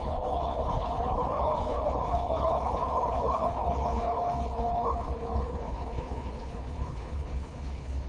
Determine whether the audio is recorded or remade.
remade